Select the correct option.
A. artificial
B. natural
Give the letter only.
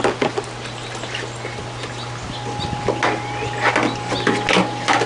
B